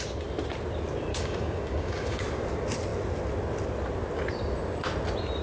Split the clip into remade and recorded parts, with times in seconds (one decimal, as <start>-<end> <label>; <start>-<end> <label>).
0.0-1.1 recorded; 1.1-2.2 remade; 2.2-5.4 recorded